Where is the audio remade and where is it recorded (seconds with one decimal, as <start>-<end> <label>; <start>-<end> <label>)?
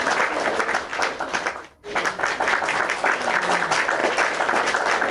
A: 0.0-5.1 recorded